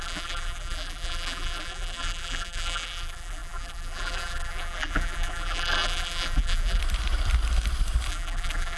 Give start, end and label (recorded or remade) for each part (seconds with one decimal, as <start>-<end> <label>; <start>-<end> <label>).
0.0-6.8 remade; 6.8-8.1 recorded; 8.1-8.8 remade